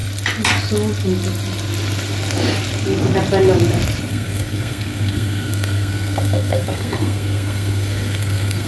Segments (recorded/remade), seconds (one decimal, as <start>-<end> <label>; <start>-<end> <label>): 0.0-4.1 recorded; 4.1-8.7 remade